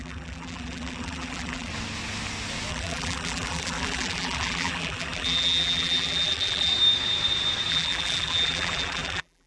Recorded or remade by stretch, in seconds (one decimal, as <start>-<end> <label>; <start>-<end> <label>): 0.0-1.7 remade; 1.7-2.7 recorded; 2.7-6.7 remade; 6.7-7.7 recorded; 7.7-9.5 remade